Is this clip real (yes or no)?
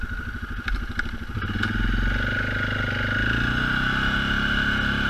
yes